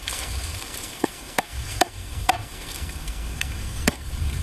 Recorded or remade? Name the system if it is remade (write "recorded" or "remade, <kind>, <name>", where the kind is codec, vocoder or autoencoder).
remade, codec, SNAC